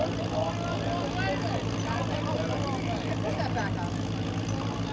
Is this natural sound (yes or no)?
yes